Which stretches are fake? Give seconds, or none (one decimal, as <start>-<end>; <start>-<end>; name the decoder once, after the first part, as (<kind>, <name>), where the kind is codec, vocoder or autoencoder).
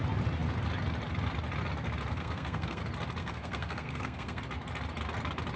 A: 2.1-2.8 (codec, SNAC); 3.2-4.4